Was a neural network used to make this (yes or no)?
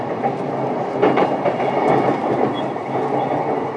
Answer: no